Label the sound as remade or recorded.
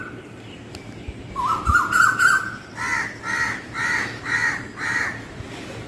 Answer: recorded